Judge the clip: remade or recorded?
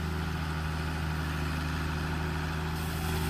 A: recorded